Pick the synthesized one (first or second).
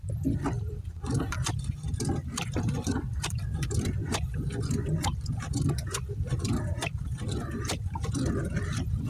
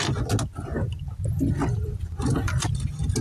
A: first